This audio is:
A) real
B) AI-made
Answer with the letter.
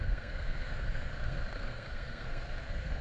B